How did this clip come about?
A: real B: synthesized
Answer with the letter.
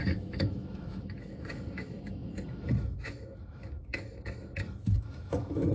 B